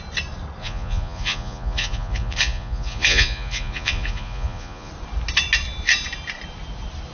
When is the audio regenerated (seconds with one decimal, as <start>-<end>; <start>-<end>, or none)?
0.6-4.9